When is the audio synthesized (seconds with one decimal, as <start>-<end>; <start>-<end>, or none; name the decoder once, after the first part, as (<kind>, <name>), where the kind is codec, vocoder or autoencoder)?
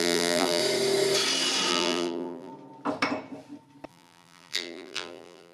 0.0-0.6 (vocoder, BigVGAN v2); 1.7-2.5; 3.9-5.5